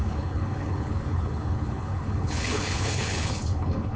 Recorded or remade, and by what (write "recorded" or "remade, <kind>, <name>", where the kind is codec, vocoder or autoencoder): remade, codec, HILCodec